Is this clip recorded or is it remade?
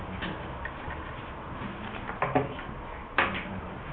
recorded